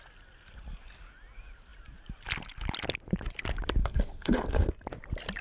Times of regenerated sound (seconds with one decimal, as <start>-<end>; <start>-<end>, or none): 3.8-4.7